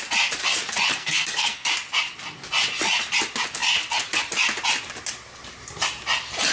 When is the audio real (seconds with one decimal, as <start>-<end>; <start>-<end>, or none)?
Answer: 0.0-0.9; 1.7-6.5